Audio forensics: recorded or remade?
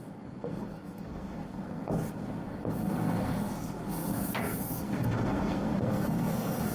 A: remade